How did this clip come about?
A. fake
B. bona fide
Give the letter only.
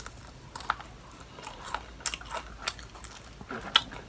B